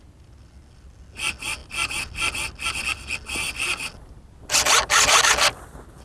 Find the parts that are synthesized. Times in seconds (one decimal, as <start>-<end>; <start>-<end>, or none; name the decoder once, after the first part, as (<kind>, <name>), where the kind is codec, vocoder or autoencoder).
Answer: none